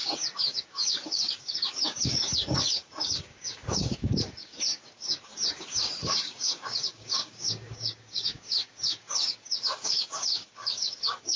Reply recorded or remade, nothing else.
remade